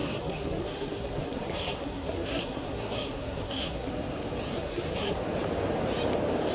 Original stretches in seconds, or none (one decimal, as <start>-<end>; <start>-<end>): 3.9-4.5; 5.2-6.5